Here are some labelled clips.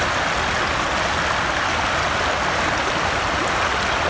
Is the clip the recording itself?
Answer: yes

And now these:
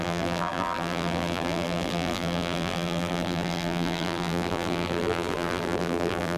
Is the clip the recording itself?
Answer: no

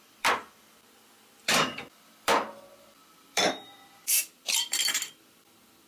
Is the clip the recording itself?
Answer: no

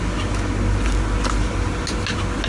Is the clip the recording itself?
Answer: yes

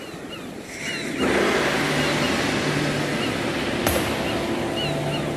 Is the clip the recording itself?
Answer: yes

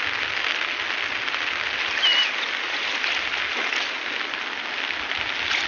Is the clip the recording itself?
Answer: yes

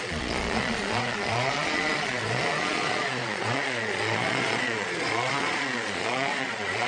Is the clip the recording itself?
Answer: no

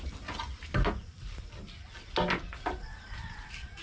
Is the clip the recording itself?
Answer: yes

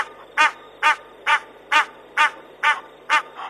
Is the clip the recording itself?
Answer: yes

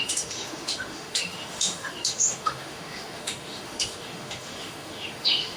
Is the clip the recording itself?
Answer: no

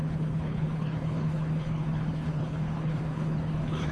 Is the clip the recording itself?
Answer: no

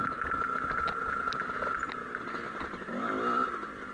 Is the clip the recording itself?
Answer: yes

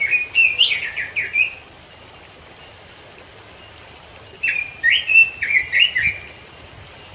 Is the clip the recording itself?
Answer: yes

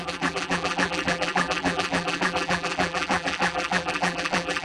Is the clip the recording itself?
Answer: no